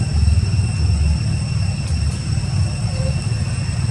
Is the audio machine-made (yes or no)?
no